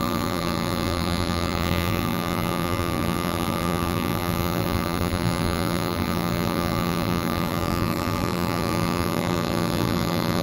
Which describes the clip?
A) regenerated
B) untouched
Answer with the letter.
A